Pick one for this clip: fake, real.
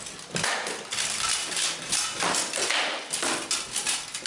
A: real